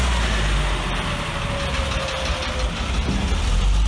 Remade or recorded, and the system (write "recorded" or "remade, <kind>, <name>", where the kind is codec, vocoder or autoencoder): recorded